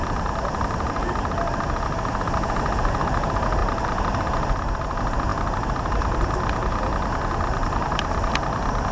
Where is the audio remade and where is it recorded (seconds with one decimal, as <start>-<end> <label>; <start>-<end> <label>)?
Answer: 0.0-8.9 recorded